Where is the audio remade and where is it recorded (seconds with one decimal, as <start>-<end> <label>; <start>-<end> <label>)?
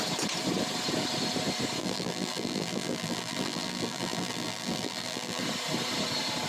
0.0-1.8 recorded; 1.8-5.4 remade; 5.4-6.5 recorded